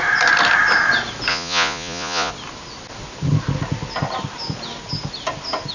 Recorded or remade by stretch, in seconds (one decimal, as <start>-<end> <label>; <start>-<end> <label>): 0.0-1.3 recorded; 1.3-2.3 remade; 2.3-5.7 recorded